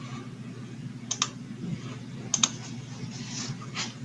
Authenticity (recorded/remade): recorded